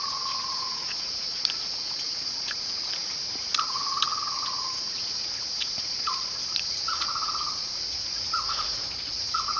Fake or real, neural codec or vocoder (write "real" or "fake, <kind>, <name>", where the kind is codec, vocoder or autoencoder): fake, vocoder, Vocos